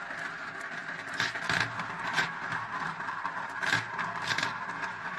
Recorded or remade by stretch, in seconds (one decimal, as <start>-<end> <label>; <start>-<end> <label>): 0.0-5.2 recorded